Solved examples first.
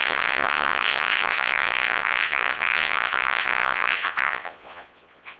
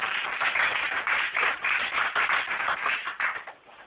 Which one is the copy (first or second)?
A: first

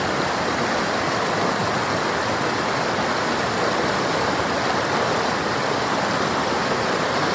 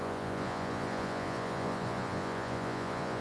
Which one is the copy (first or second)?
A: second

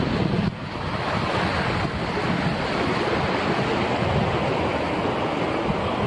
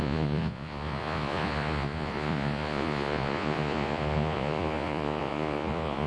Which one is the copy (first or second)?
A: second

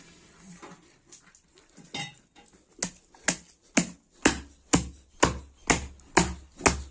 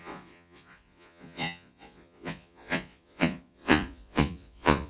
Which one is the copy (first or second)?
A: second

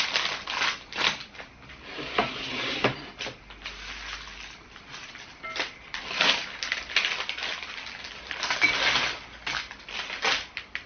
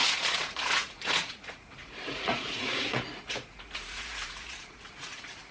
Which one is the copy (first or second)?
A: second